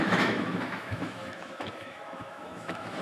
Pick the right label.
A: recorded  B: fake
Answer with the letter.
B